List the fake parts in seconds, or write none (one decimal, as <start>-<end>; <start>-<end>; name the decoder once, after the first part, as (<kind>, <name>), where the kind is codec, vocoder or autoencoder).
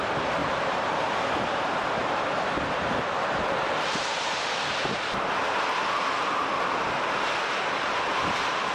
0.4-1.1 (vocoder, BigVGAN v2)